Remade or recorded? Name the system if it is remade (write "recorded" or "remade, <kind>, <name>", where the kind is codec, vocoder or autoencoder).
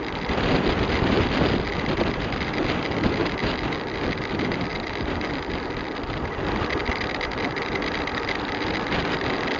recorded